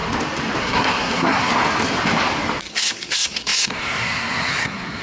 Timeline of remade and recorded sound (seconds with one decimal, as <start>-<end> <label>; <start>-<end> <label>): 0.0-0.6 recorded; 0.6-1.5 remade; 1.5-2.7 recorded; 2.7-5.0 remade